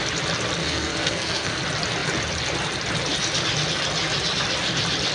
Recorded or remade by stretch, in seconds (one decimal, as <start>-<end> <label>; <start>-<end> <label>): 0.0-0.6 recorded; 0.6-1.6 remade; 1.6-5.1 recorded